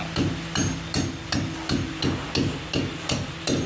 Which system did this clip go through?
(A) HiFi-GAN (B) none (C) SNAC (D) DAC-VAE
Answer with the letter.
B